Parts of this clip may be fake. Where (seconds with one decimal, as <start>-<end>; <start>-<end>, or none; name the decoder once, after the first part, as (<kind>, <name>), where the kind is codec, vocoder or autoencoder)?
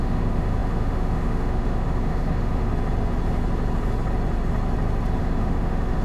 0.0-2.7 (autoencoder, DAC-VAE); 5.2-6.0